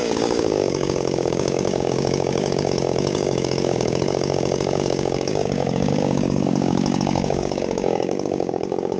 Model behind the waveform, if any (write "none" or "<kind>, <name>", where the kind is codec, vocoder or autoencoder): codec, DAC